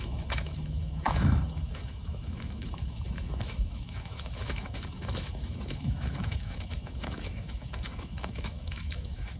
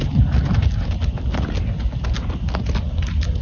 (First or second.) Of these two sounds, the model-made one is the first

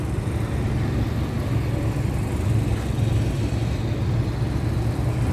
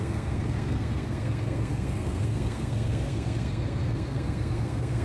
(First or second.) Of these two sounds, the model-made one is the second